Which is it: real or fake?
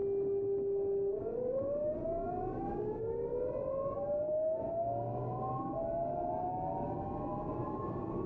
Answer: real